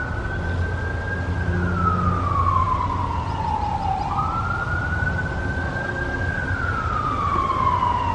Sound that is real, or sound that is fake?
real